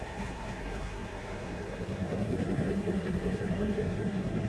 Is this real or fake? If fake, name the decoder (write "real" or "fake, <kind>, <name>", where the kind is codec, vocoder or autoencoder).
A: fake, codec, SNAC